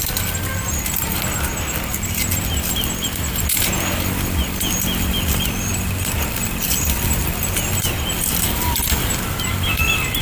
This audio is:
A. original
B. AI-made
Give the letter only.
A